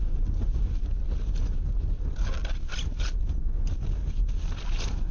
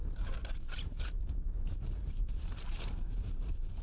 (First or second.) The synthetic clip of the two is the second